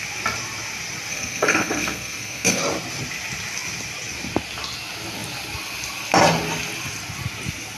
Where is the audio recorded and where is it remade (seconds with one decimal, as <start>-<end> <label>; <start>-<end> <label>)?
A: 0.0-1.1 recorded; 1.1-2.6 remade; 2.6-7.8 recorded